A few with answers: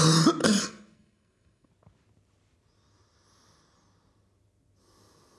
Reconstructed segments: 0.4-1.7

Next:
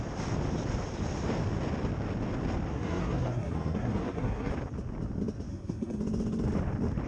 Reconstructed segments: 2.7-4.5; 5.5-6.0

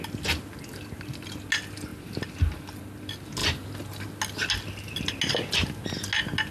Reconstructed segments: none

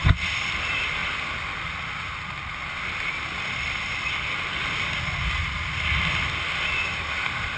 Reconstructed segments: none